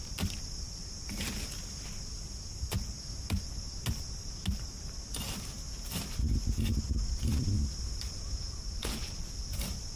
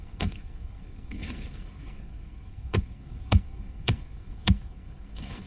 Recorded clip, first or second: first